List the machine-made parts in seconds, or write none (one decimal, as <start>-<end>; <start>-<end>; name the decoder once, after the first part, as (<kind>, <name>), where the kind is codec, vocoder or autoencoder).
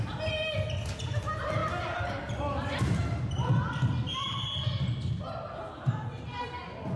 none